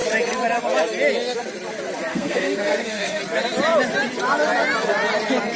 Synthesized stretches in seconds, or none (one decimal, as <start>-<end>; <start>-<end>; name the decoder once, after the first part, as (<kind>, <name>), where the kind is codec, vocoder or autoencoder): 2.1-3.2 (codec, SNAC)